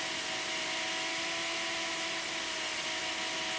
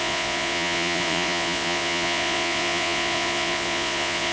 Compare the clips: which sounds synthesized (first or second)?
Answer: second